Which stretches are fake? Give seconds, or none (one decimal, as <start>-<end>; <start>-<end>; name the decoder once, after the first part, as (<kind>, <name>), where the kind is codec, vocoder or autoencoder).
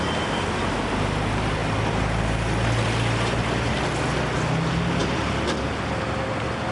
none